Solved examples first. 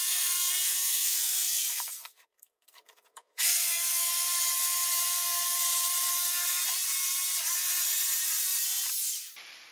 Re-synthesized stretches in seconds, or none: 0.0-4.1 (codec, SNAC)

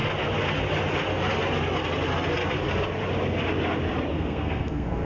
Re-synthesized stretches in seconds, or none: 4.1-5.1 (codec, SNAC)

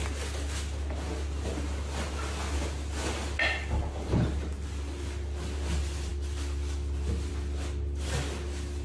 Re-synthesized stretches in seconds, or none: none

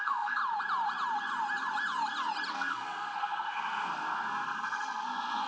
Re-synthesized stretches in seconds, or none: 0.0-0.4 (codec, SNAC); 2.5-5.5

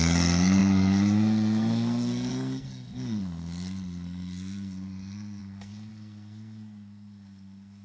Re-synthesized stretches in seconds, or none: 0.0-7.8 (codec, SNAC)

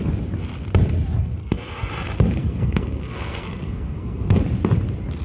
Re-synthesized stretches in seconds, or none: 1.4-1.9 (codec, SNAC); 2.4-4.4

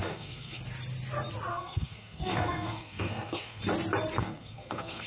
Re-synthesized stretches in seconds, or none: 0.0-0.6 (codec, SNAC); 1.5-3.6; 4.2-5.1

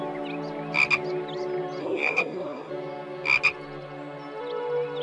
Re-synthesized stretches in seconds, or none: 1.8-2.7 (codec, SNAC)